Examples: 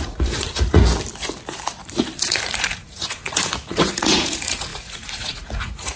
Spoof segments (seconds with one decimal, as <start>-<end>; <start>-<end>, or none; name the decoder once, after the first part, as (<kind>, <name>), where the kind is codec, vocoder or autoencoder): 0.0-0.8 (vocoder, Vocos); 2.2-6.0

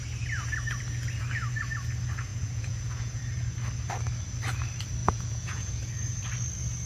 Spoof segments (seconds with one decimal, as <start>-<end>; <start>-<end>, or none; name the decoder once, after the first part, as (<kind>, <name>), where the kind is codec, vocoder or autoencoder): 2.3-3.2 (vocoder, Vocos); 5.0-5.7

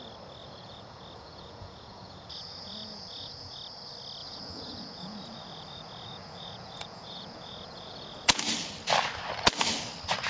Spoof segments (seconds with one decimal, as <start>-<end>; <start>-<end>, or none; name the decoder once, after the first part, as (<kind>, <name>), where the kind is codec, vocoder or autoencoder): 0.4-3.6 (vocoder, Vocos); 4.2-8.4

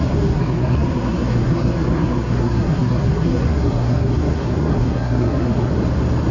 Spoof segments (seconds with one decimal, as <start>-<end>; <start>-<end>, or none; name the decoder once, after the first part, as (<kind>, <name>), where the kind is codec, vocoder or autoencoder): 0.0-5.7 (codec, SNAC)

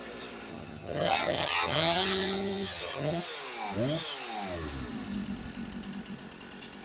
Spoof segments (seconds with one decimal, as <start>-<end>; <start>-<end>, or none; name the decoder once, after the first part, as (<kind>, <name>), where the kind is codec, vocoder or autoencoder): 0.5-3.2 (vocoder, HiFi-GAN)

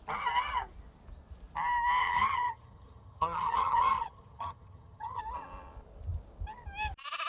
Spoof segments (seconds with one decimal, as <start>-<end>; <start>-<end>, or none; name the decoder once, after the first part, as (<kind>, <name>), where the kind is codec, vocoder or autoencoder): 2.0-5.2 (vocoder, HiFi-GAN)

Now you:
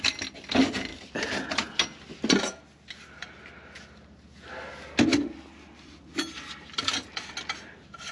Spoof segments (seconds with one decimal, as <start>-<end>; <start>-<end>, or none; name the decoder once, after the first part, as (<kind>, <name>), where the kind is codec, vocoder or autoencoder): none